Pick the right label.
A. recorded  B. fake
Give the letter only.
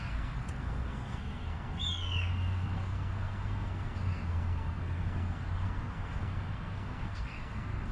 B